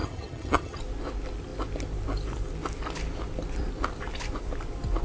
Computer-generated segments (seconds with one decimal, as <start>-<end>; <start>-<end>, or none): 0.0-0.8